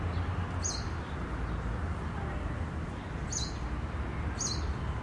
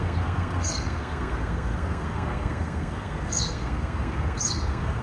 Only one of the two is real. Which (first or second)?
first